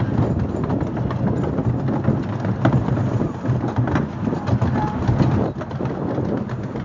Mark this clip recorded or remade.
recorded